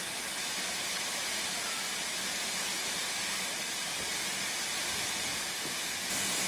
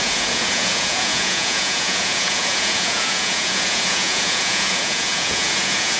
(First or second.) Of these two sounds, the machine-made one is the second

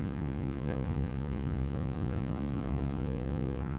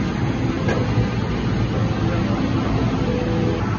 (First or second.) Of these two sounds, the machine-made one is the first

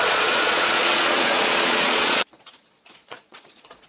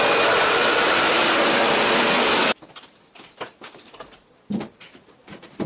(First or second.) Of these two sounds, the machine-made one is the first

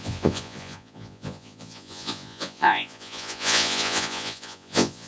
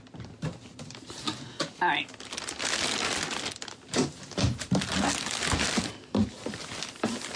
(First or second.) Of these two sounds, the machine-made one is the first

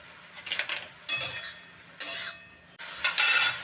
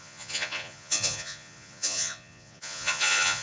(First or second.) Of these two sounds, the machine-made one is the second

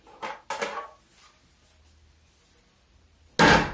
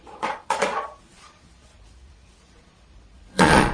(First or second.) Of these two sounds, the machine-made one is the second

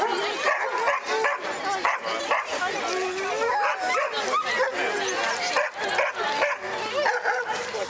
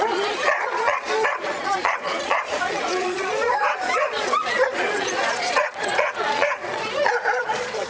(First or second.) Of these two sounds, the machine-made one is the second